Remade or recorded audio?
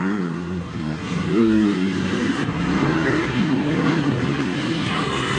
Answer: remade